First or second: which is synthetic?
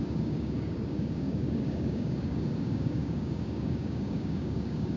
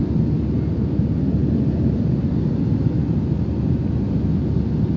first